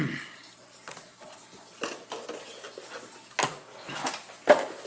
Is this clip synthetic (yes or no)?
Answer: no